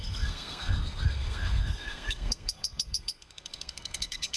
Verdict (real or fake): fake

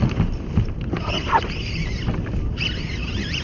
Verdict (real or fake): real